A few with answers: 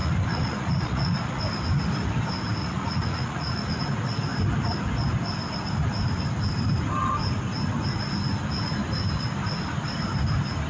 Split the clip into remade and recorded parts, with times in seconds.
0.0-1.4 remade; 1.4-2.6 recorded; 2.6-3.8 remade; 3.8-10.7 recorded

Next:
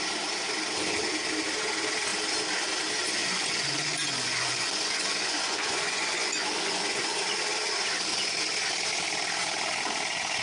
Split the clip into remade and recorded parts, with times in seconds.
0.0-3.2 recorded; 3.2-7.2 remade; 7.2-8.1 recorded; 8.1-8.7 remade; 8.7-10.4 recorded

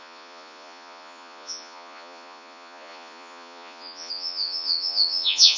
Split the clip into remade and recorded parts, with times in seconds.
0.0-5.6 remade

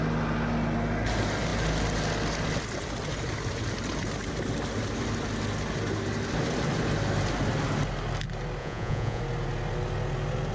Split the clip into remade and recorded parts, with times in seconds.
0.0-8.6 recorded; 8.6-9.2 remade; 9.2-10.5 recorded

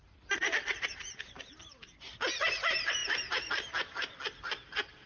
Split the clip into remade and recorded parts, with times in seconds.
0.0-5.1 recorded